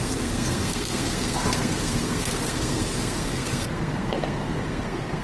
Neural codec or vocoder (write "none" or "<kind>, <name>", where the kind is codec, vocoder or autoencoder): codec, SNAC